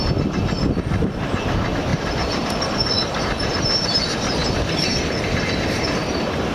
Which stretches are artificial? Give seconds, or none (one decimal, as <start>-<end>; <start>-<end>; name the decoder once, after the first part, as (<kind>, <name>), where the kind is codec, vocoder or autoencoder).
1.9-2.7 (vocoder, BigVGAN v2); 4.4-5.5